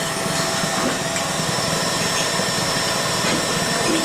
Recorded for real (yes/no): yes